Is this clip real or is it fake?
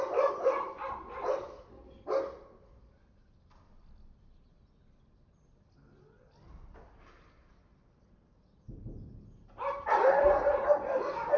real